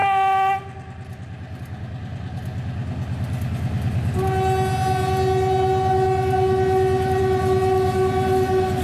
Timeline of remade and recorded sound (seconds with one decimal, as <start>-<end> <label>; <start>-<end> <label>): 0.0-8.8 recorded

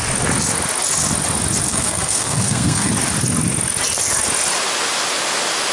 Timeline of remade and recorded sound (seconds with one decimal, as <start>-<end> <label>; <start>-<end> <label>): 0.0-1.7 recorded; 1.7-2.9 remade; 2.9-5.7 recorded

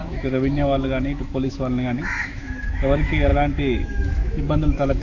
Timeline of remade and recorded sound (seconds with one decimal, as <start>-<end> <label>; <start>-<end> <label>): 0.0-5.0 remade